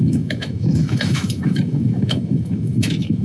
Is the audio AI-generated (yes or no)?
yes